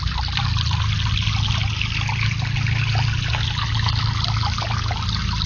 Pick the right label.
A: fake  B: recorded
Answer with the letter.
B